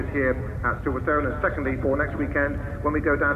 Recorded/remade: recorded